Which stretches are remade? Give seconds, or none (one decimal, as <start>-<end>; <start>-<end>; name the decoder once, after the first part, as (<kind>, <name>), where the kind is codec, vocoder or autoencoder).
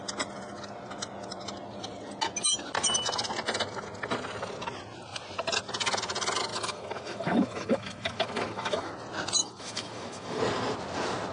6.5-8.9 (autoencoder, DAC-VAE); 9.4-10.4